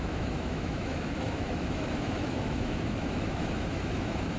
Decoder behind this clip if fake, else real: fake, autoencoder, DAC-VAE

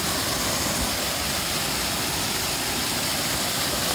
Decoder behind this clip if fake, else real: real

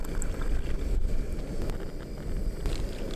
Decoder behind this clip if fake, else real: real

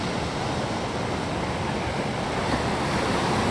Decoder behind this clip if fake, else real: real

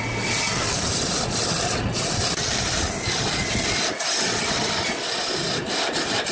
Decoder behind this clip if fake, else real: real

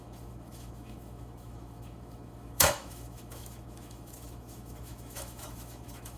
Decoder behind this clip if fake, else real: fake, autoencoder, DAC-VAE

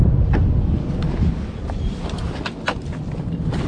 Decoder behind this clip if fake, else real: real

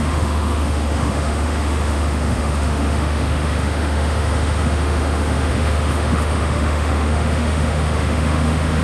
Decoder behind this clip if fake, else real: fake, autoencoder, DAC-VAE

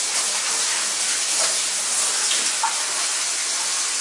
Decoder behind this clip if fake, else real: real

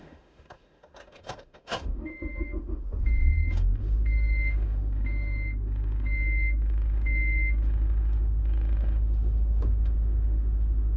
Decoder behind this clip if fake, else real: fake, autoencoder, DAC-VAE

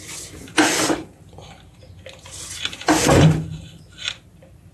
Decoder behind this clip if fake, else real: real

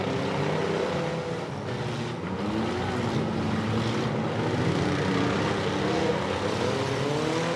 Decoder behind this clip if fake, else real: real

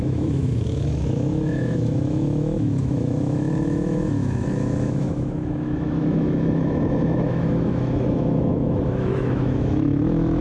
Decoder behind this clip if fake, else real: fake, autoencoder, DAC-VAE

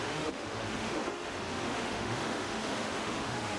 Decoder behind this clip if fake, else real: fake, autoencoder, DAC-VAE